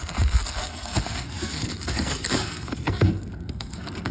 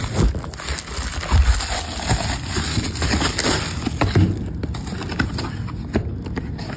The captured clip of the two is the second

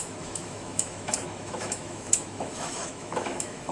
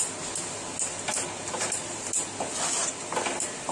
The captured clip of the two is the second